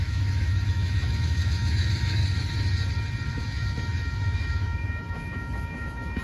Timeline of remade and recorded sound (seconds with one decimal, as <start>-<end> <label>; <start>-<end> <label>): 0.0-2.2 remade; 2.2-3.3 recorded; 3.3-6.2 remade